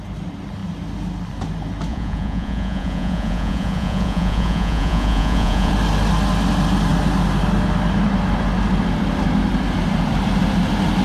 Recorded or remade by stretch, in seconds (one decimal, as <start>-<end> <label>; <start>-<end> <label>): 0.0-1.9 recorded; 1.9-5.7 remade; 5.7-11.0 recorded